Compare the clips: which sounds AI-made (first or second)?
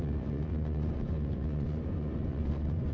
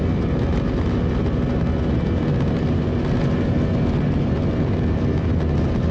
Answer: first